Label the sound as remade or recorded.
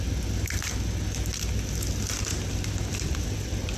recorded